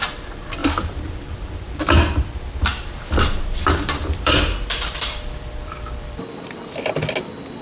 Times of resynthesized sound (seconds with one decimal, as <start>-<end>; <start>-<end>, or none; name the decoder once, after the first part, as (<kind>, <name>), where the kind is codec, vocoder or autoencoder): 0.6-2.1 (vocoder, BigVGAN v2); 2.7-6.6